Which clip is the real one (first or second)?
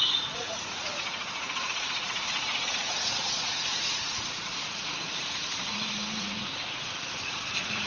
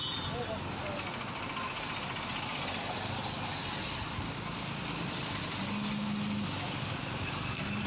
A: second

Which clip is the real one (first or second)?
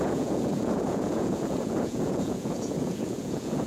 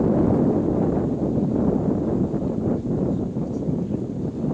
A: second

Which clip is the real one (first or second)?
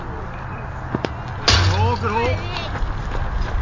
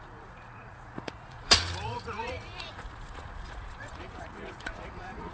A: first